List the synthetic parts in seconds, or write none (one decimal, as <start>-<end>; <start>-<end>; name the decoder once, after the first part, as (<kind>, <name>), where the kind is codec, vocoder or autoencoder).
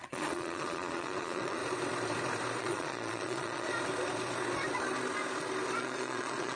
0.0-1.6 (vocoder, Vocos); 2.6-3.7; 5.8-6.6